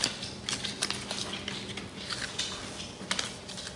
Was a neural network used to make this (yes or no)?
no